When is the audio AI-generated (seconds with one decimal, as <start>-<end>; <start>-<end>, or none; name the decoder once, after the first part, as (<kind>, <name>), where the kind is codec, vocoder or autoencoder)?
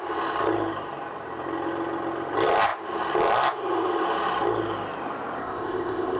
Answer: 5.4-6.2 (codec, ZipCodec)